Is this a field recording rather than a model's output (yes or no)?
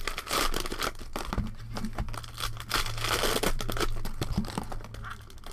yes